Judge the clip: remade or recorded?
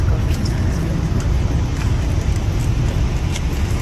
recorded